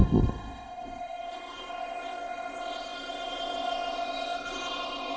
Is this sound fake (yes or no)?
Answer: yes